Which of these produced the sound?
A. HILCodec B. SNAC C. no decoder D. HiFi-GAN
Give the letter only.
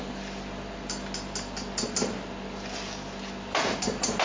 C